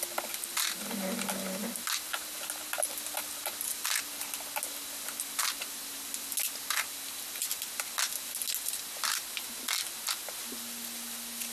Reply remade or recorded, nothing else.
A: recorded